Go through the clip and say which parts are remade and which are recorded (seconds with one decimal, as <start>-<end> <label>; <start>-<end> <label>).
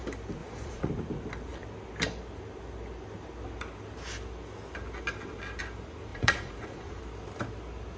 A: 0.0-0.4 recorded; 0.4-0.9 remade; 0.9-6.1 recorded; 6.1-7.0 remade; 7.0-8.0 recorded